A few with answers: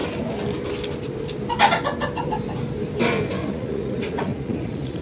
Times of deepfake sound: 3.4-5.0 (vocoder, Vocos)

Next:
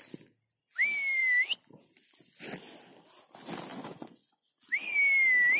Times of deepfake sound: 3.7-4.5 (vocoder, Vocos)

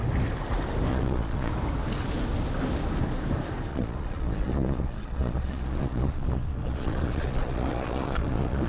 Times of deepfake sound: 0.9-1.5 (vocoder, Vocos); 3.7-8.7

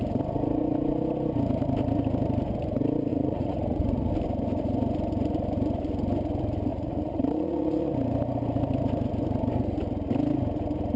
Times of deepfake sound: 3.1-4.1 (vocoder, Vocos); 6.7-7.9